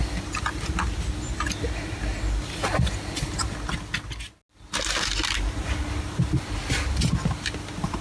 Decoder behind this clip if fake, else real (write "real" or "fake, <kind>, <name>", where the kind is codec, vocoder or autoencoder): real